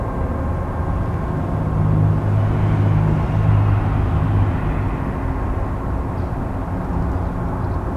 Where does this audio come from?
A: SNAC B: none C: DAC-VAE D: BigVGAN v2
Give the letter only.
B